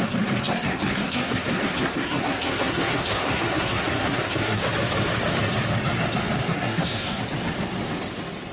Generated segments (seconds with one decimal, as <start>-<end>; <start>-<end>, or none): 0.5-4.6; 6.4-7.2